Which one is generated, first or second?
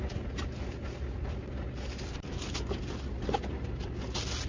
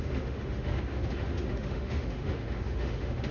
second